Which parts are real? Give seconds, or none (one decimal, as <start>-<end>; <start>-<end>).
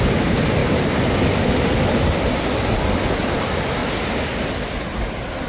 0.0-5.5